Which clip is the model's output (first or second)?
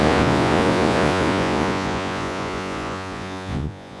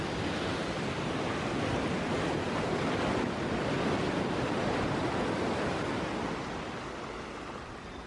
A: first